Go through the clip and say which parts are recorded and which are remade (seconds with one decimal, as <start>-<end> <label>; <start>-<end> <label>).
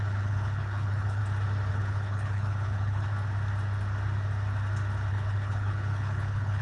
0.0-1.2 remade; 1.2-1.7 recorded; 1.7-3.1 remade; 3.1-5.1 recorded; 5.1-6.6 remade